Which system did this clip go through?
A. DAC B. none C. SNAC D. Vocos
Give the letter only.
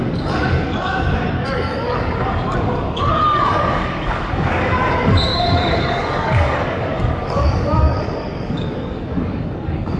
A